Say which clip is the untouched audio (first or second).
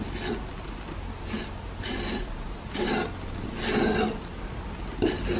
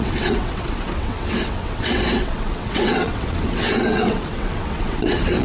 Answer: first